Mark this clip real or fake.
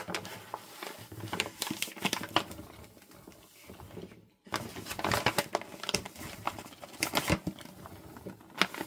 real